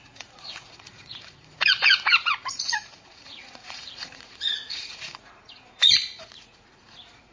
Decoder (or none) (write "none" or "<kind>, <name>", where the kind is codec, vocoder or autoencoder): vocoder, Vocos